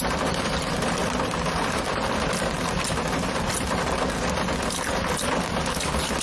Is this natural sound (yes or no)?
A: yes